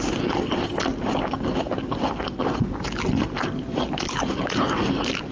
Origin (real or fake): real